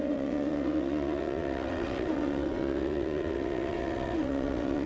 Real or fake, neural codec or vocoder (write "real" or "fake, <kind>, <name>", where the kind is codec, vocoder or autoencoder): fake, vocoder, WaveNeXt